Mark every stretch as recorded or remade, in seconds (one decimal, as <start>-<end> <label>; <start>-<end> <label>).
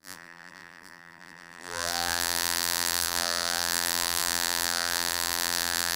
0.0-6.0 remade